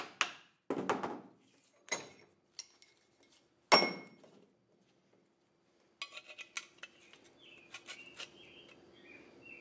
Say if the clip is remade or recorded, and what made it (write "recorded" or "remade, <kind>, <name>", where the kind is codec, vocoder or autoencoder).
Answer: recorded